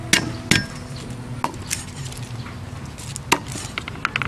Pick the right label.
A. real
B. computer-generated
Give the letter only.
A